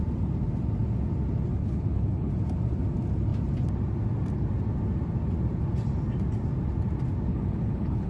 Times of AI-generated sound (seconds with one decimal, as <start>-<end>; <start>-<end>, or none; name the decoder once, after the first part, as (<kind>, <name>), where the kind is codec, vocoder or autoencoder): 1.6-2.3 (codec, HILCodec); 7.3-8.1